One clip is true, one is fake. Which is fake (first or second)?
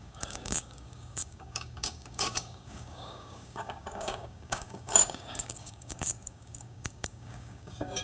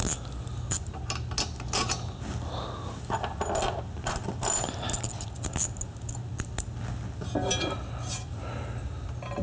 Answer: first